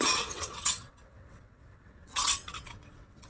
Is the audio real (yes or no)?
no